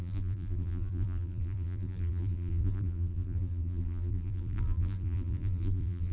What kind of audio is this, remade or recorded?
remade